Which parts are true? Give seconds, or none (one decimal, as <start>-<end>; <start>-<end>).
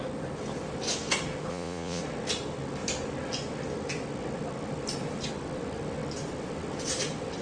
0.0-1.5; 2.0-7.4